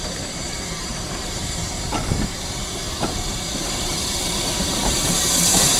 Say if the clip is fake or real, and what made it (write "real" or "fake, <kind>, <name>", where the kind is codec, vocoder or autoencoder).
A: fake, vocoder, BigVGAN v2